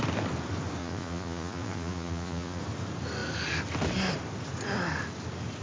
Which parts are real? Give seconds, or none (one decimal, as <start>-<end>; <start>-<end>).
0.0-0.8; 2.6-5.6

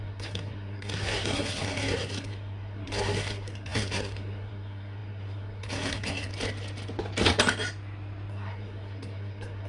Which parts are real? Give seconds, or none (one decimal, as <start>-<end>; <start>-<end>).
6.3-8.3

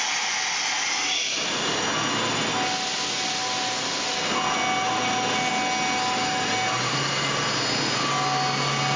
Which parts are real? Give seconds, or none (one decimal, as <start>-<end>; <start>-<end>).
0.0-9.0

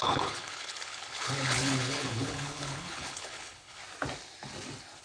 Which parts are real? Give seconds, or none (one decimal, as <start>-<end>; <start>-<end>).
3.8-5.0